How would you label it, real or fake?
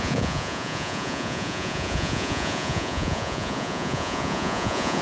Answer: fake